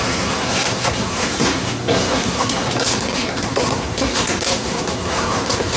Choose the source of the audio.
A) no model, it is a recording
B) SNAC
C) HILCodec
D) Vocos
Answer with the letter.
B